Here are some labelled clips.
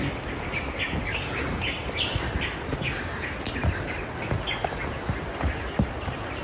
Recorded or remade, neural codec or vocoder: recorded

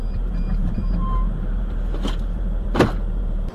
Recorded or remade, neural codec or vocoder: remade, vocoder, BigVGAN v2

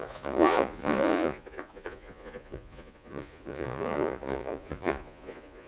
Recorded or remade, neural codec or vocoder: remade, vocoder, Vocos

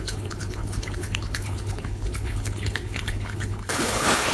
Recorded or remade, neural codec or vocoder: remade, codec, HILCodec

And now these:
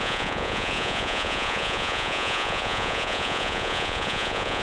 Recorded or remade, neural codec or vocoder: remade, vocoder, Vocos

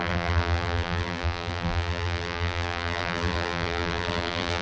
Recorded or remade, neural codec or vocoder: remade, vocoder, BigVGAN v2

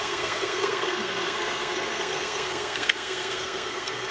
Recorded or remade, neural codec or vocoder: remade, codec, SNAC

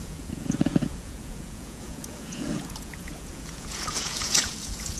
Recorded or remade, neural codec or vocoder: remade, vocoder, Vocos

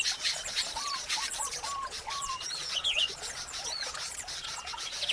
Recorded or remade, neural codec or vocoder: remade, vocoder, Vocos